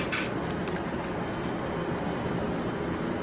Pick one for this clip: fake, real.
real